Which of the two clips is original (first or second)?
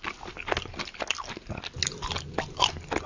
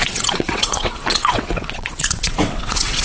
first